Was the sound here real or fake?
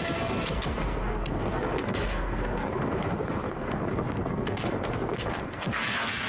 fake